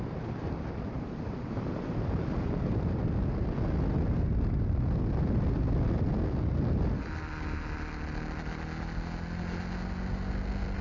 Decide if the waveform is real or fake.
real